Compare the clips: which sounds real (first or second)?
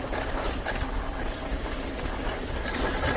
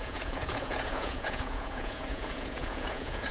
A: first